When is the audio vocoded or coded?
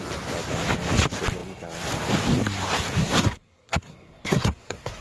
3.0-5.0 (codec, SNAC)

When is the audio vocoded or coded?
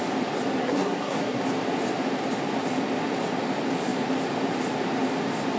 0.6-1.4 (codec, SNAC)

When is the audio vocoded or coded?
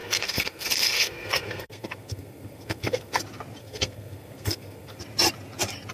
0.0-3.2 (codec, SNAC); 3.6-5.0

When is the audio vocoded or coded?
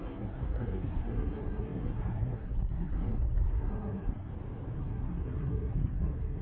0.0-4.3 (codec, SNAC); 4.8-6.4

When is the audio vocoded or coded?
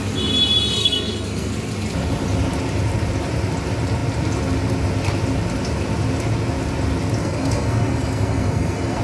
0.8-1.5 (codec, SNAC); 7.2-9.0